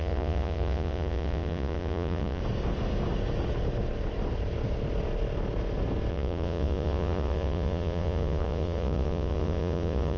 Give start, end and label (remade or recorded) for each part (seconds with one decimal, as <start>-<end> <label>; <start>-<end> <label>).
0.0-2.4 remade; 2.4-6.1 recorded; 6.1-10.2 remade